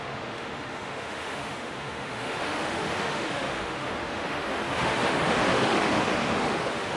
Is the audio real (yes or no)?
no